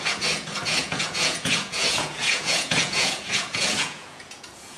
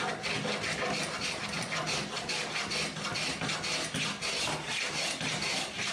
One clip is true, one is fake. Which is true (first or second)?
second